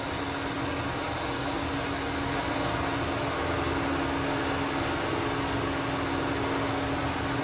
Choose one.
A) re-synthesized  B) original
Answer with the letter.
B